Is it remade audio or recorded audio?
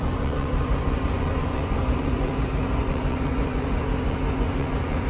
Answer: remade